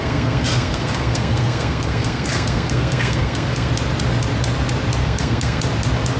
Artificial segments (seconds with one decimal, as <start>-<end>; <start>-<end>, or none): 0.0-3.7; 5.0-5.6